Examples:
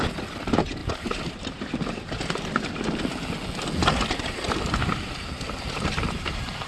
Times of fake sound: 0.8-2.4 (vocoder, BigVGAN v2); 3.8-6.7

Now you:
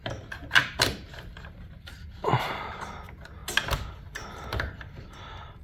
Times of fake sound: 0.6-2.7 (vocoder, BigVGAN v2)

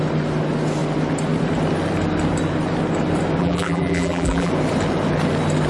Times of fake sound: 3.4-4.5 (vocoder, BigVGAN v2)

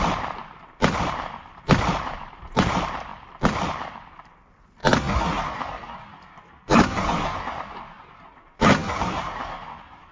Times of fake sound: 0.0-0.4 (vocoder, BigVGAN v2); 1.0-3.1; 6.6-10.1

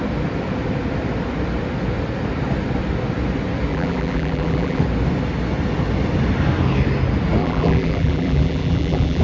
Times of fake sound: 3.7-4.8 (vocoder, BigVGAN v2); 7.4-9.2

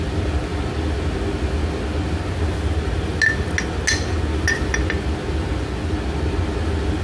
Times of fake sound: none

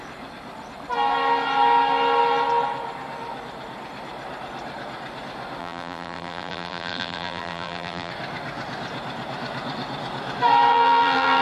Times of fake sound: 5.6-8.1 (vocoder, BigVGAN v2); 10.7-11.4

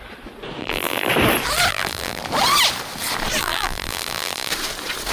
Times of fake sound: 0.6-1.1 (vocoder, BigVGAN v2); 1.7-2.2; 3.4-4.5